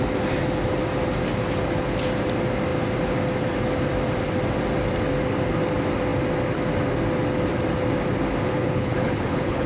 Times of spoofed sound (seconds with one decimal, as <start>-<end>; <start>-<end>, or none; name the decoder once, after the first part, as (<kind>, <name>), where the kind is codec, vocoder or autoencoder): 8.5-9.7 (codec, HILCodec)